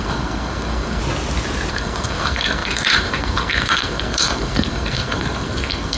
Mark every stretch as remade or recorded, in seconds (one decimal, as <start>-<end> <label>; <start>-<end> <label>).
0.0-1.0 remade; 1.0-1.7 recorded; 1.7-6.0 remade